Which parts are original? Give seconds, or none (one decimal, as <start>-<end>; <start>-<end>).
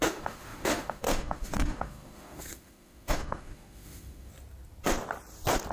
4.3-5.7